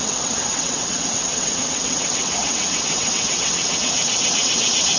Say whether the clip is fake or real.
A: fake